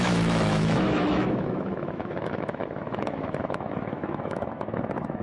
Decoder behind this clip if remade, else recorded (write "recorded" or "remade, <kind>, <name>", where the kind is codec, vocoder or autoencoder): remade, autoencoder, DAC-VAE